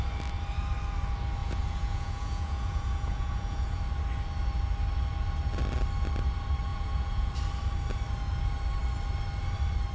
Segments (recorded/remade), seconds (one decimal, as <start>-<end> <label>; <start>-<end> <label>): 0.0-1.4 recorded; 1.4-3.8 remade; 3.8-6.7 recorded; 6.7-7.3 remade; 7.3-9.9 recorded